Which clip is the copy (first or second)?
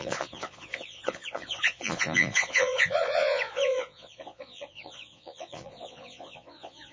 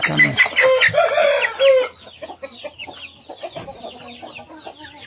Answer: first